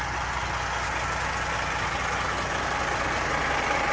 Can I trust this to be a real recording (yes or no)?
yes